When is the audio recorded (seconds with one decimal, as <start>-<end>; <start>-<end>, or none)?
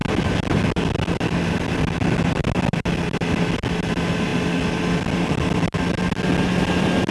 0.0-7.1